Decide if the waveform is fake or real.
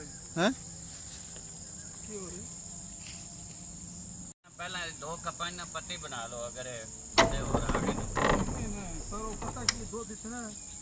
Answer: real